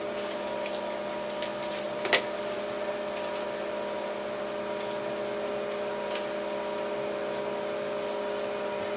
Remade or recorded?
recorded